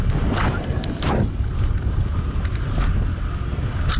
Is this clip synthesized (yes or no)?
no